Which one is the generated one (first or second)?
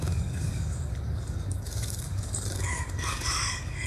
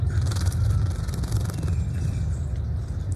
first